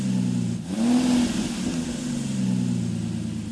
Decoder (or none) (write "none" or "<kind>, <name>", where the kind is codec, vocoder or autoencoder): none